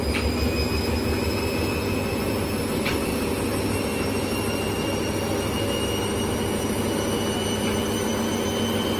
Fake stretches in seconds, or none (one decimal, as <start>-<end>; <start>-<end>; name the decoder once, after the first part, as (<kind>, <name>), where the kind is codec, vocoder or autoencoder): none